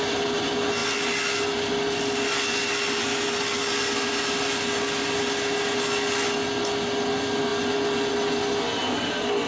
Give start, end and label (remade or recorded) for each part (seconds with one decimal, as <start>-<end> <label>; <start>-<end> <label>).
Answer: 0.0-9.5 recorded